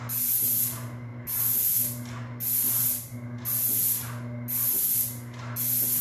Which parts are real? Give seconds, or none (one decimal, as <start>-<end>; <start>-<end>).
0.0-6.0